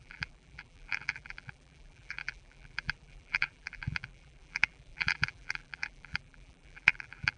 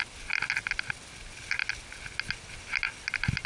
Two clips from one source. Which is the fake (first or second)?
first